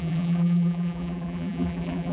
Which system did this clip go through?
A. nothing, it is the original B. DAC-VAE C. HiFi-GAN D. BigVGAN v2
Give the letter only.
D